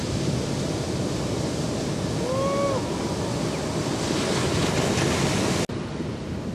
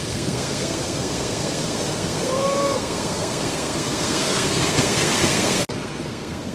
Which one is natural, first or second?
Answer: first